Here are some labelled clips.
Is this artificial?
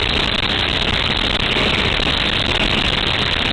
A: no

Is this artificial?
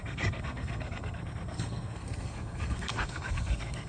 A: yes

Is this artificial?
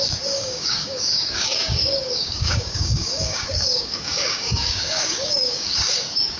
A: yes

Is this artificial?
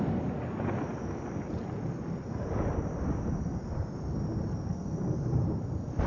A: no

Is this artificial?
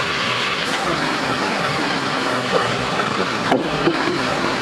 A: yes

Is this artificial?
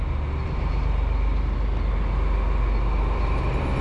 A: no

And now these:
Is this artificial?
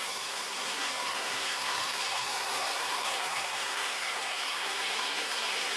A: yes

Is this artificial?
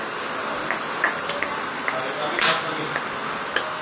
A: no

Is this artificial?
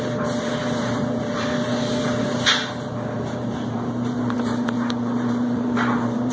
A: yes